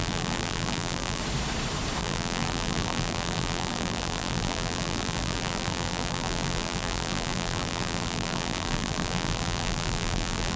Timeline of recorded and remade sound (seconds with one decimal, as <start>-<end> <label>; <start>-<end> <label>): 0.0-1.2 remade; 1.2-2.0 recorded; 2.0-10.6 remade

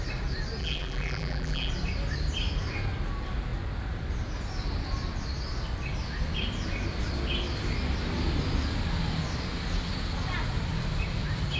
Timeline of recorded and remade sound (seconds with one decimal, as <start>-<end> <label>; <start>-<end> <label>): 0.0-0.6 recorded; 0.6-1.7 remade; 1.7-11.6 recorded

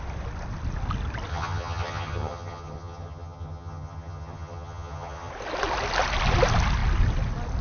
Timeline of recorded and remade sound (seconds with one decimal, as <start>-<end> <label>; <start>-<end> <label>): 0.0-1.3 recorded; 1.3-5.3 remade; 5.3-7.6 recorded

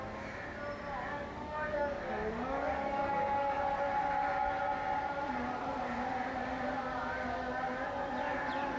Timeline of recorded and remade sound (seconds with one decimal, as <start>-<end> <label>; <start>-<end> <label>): 0.0-1.1 recorded; 1.1-3.6 remade; 3.6-8.8 recorded

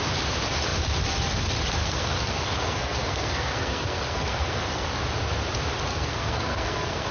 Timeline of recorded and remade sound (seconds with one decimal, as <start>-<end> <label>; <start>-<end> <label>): 0.0-1.8 recorded; 1.8-4.9 remade; 4.9-5.9 recorded; 5.9-7.1 remade

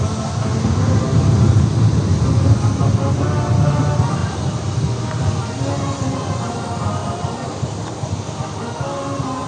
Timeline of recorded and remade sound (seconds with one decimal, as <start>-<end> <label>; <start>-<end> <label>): 0.0-4.2 recorded; 4.2-4.9 remade; 4.9-7.0 recorded; 7.0-8.3 remade; 8.3-9.5 recorded